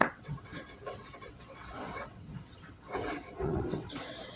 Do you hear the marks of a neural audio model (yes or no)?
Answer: yes